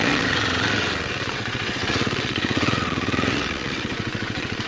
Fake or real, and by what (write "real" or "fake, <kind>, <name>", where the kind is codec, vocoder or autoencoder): fake, vocoder, WaveNeXt